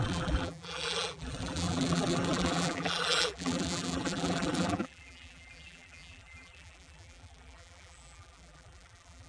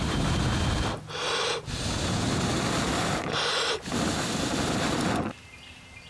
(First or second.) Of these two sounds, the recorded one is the second